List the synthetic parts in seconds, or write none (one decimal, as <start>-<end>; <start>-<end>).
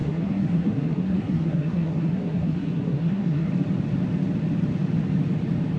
0.0-3.5